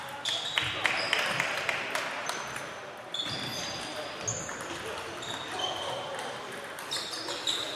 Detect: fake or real real